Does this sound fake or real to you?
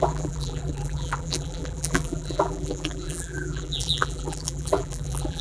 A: fake